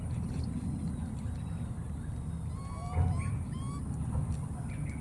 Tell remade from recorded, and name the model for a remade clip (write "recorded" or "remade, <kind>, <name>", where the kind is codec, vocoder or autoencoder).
recorded